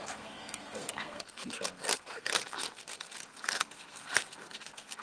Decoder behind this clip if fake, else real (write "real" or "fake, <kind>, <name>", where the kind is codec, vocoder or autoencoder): fake, codec, SNAC